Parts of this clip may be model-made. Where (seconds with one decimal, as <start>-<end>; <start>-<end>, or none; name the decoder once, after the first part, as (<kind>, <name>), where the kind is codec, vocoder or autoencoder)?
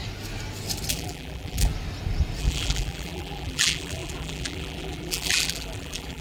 0.9-1.7 (vocoder, BigVGAN v2); 2.4-6.2